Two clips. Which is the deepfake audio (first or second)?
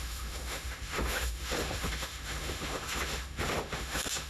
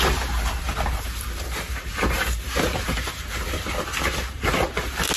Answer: first